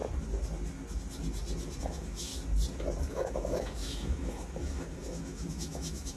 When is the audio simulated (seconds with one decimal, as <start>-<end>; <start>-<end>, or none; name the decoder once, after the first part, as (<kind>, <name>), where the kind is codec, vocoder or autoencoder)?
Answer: 1.8-2.3 (autoencoder, DAC-VAE); 3.1-6.2

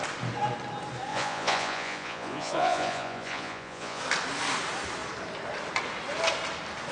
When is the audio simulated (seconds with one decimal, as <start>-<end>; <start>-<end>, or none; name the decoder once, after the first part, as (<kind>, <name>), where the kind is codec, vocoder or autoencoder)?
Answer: 1.1-4.0 (vocoder, Vocos)

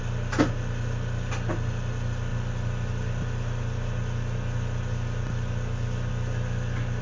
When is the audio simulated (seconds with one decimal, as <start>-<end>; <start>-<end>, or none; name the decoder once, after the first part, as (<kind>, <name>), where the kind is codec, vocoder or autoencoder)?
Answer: none

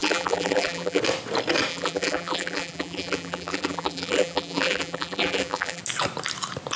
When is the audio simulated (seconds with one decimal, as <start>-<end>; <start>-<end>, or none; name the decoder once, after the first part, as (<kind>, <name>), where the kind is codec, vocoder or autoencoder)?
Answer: 0.0-1.0 (vocoder, BigVGAN v2); 1.7-5.8